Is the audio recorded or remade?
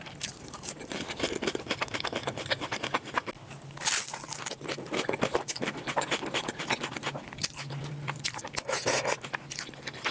recorded